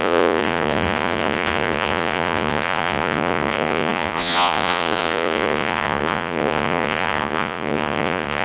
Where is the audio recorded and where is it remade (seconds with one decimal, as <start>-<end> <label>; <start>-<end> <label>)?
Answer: 0.0-8.4 remade